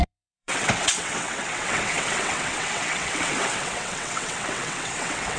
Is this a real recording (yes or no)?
no